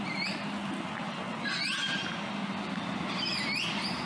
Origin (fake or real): real